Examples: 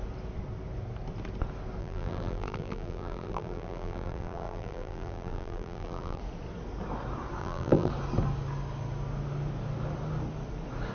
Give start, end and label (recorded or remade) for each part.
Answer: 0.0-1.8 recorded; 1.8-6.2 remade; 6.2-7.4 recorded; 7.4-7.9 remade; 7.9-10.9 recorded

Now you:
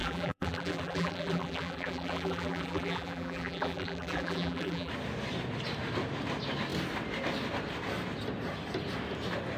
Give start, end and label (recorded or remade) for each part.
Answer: 0.0-4.9 remade; 4.9-9.6 recorded

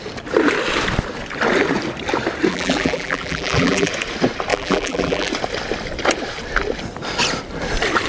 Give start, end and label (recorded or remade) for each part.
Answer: 0.0-2.5 recorded; 2.5-3.9 remade; 3.9-4.5 recorded; 4.5-5.3 remade; 5.3-8.1 recorded

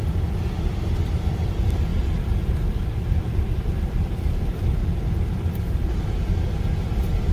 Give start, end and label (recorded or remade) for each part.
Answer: 0.0-4.8 remade; 4.8-6.8 recorded; 6.8-7.3 remade

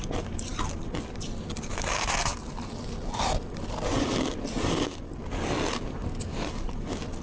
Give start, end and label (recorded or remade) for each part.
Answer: 0.0-7.2 recorded

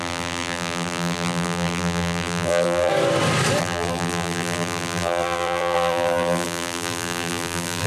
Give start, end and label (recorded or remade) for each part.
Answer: 0.0-2.9 remade; 2.9-3.6 recorded; 3.6-7.9 remade

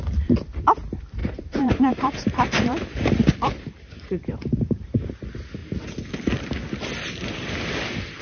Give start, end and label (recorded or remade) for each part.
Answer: 0.0-1.2 recorded; 1.2-5.1 remade; 5.1-8.2 recorded